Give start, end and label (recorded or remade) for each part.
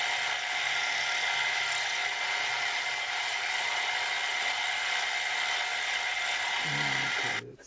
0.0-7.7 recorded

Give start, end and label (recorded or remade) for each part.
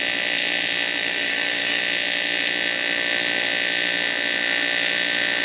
0.0-1.0 recorded; 1.0-1.8 remade; 1.8-5.4 recorded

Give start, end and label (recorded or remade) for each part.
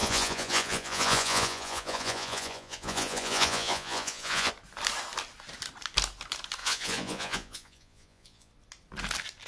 0.0-4.5 remade; 4.5-6.6 recorded; 6.6-8.5 remade; 8.5-9.5 recorded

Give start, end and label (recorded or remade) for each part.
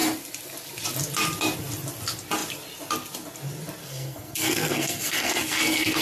0.0-3.8 recorded; 3.8-6.0 remade